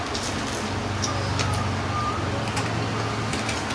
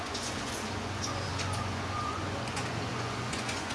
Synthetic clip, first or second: second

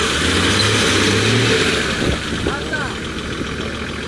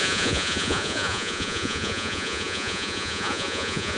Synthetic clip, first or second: second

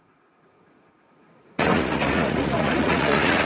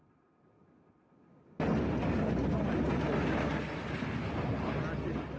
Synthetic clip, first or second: first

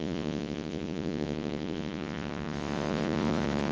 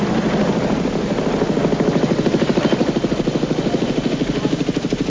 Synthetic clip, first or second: first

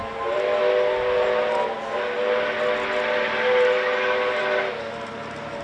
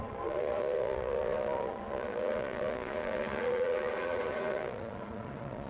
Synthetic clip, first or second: second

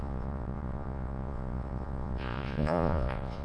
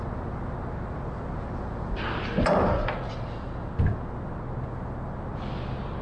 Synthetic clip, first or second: first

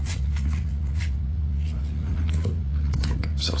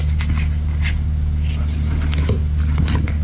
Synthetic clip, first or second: first